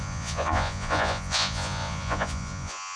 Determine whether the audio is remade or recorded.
remade